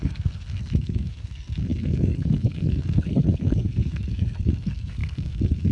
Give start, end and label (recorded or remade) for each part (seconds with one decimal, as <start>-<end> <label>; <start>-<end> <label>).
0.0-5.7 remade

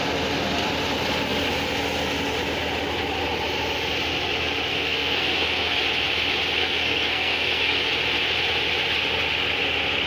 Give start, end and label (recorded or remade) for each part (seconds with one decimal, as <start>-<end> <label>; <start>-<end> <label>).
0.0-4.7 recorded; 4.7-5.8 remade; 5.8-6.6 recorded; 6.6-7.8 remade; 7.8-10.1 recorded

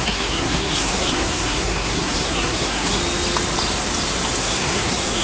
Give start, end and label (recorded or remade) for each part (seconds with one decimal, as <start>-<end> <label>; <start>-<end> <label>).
0.0-3.0 remade; 3.0-4.4 recorded; 4.4-5.2 remade